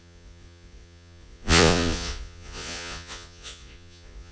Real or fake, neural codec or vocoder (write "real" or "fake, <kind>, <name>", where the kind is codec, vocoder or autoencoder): fake, vocoder, Vocos